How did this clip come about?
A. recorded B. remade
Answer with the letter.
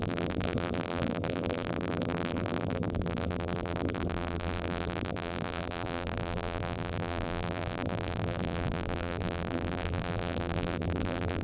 B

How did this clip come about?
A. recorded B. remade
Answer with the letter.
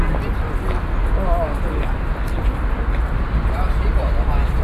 A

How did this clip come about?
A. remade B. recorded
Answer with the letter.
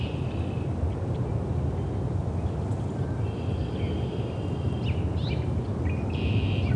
B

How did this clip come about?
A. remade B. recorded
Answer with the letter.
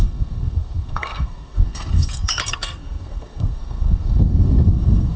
A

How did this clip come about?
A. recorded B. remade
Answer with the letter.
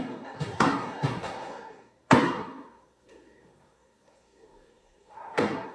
B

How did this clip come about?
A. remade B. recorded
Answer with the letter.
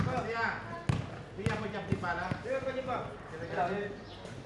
B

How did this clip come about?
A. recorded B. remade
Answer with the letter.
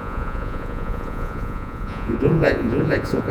B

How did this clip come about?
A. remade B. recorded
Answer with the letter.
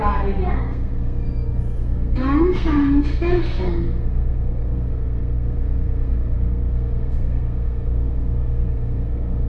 A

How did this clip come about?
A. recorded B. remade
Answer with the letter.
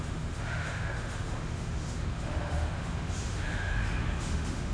B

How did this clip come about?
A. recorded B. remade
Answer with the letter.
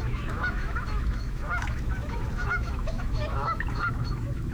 B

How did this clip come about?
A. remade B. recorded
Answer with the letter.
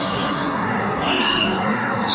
A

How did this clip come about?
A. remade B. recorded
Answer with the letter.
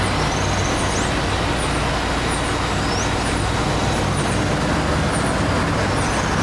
B